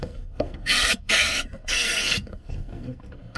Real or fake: fake